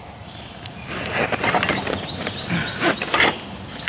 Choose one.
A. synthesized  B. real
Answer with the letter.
B